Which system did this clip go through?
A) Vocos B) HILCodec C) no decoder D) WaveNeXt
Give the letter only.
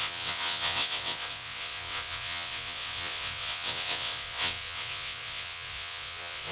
D